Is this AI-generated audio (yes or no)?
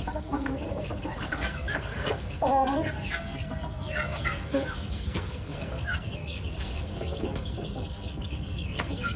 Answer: yes